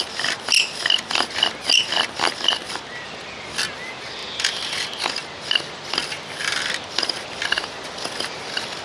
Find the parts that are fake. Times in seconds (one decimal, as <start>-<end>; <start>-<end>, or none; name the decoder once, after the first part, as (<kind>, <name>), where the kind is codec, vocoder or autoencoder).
4.2-5.0 (vocoder, BigVGAN v2)